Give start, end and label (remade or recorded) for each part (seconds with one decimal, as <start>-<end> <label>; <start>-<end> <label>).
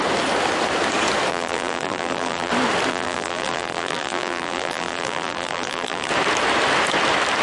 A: 0.0-1.3 recorded; 1.3-2.5 remade; 2.5-2.9 recorded; 2.9-6.1 remade; 6.1-7.4 recorded